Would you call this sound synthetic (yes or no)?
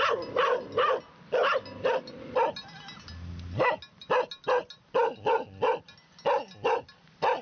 no